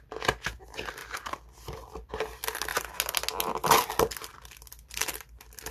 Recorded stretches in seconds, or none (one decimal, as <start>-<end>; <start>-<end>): 0.0-1.0; 2.1-5.7